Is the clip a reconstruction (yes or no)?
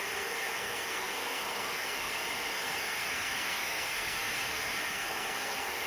yes